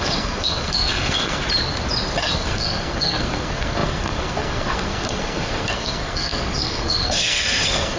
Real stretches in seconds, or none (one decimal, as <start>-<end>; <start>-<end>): 1.4-2.2